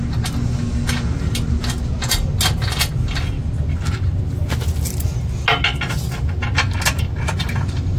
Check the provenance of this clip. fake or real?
real